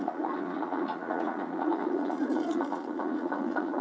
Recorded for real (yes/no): no